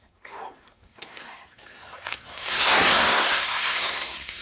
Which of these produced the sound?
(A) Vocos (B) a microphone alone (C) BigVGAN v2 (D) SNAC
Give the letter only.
D